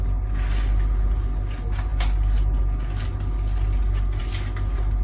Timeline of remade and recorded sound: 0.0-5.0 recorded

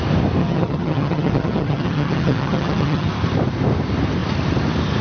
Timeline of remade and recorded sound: 0.0-0.4 recorded; 0.4-3.1 remade; 3.1-5.0 recorded